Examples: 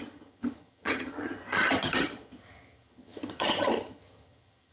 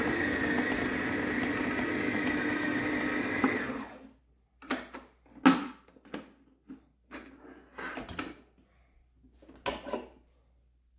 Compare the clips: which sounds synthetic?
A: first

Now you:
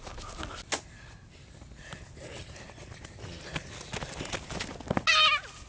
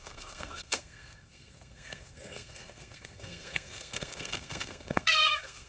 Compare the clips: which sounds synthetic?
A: second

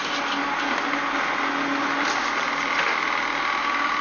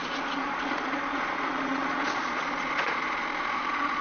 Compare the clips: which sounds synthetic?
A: second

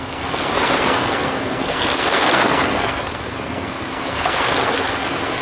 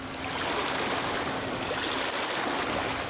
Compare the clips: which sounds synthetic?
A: first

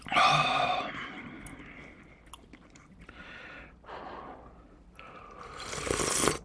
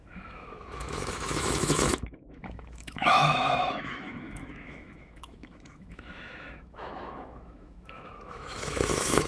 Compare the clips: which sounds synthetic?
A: second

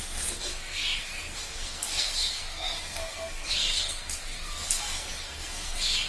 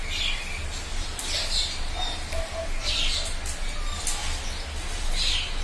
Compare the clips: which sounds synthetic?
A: first